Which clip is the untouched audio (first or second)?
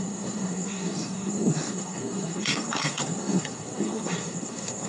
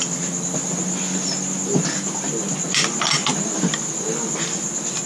second